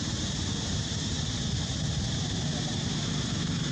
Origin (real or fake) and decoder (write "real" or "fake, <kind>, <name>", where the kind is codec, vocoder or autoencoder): real